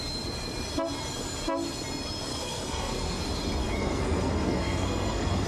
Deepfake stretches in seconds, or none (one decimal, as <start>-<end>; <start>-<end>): 2.3-3.2; 3.6-5.5

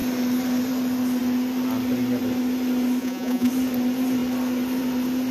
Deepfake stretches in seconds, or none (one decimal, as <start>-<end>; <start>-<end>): 3.0-3.5

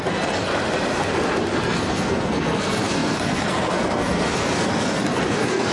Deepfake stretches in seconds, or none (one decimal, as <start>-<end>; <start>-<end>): 0.0-0.5; 1.6-5.7

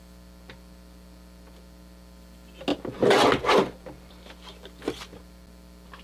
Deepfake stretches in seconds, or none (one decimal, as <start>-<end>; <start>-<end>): none

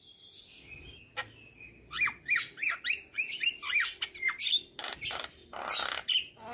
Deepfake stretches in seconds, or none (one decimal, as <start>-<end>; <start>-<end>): none

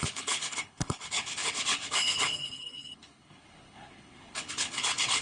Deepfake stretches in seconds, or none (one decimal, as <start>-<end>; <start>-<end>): 0.0-5.2